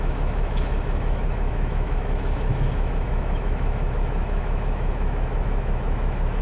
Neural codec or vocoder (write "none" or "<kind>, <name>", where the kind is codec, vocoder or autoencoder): autoencoder, DAC-VAE